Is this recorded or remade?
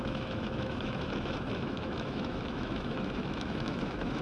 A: remade